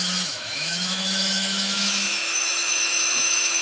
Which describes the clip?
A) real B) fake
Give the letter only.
B